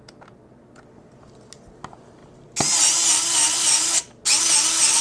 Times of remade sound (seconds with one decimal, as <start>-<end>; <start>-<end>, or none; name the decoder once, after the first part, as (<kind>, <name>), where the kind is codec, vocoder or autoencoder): none